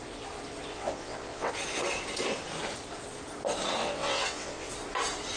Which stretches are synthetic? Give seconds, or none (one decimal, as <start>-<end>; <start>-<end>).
0.7-1.5; 3.8-4.7